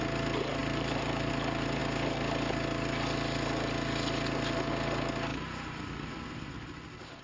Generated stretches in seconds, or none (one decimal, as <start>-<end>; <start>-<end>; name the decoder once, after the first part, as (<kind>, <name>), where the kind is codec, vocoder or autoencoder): 0.6-1.3 (vocoder, BigVGAN v2); 5.3-6.5